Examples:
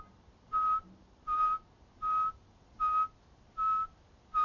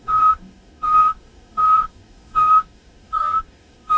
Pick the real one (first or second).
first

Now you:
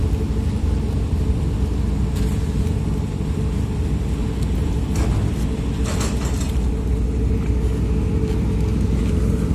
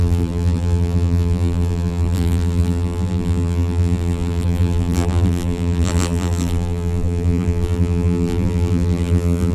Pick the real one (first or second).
first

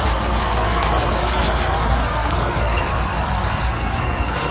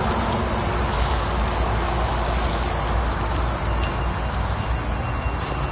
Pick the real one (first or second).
second